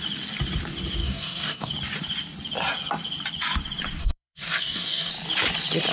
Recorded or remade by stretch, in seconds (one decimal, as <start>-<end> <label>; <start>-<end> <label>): 0.0-1.0 recorded; 1.0-1.7 remade; 1.7-4.0 recorded; 4.0-5.1 remade; 5.1-5.9 recorded

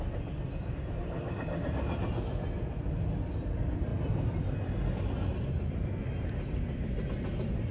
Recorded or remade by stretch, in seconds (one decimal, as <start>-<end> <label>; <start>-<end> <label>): 0.0-7.7 recorded